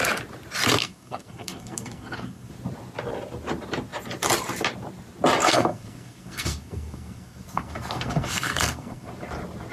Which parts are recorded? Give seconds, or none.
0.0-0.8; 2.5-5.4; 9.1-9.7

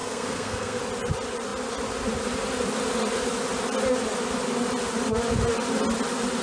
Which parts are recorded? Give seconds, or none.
0.8-6.4

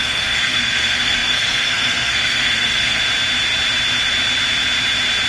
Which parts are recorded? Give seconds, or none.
3.0-5.3

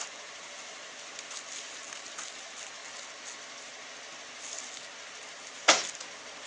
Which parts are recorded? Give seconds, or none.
0.0-6.5